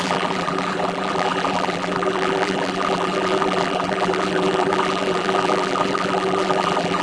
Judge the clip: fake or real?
fake